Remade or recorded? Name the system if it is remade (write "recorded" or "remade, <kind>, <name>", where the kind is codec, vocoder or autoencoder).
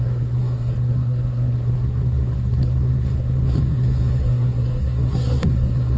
remade, codec, SNAC